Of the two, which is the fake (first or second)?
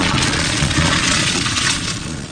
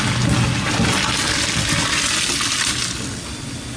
first